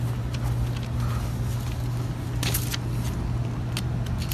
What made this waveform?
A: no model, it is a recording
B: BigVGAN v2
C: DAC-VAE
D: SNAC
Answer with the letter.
A